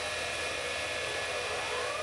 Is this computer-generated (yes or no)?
no